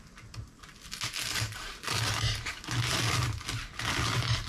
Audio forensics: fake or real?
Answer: real